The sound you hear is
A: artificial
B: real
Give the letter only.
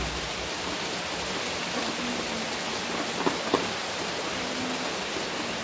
B